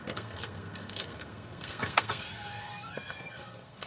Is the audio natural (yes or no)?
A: no